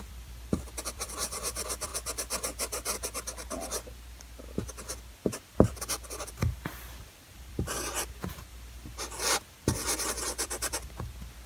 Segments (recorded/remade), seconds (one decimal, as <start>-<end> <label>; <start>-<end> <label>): 0.0-1.9 remade; 1.9-6.3 recorded; 6.3-8.5 remade; 8.5-10.1 recorded; 10.1-11.5 remade